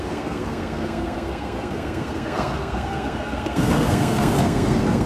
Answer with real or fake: fake